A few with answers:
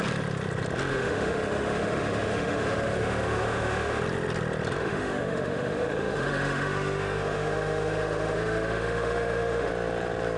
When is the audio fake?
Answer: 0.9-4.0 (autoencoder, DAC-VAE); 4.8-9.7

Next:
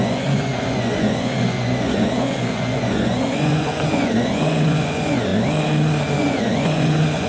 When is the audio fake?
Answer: 0.0-5.3 (vocoder, Vocos); 6.2-7.3

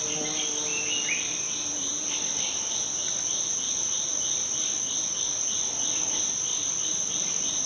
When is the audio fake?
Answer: none